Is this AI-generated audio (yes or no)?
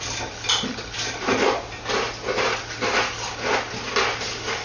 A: no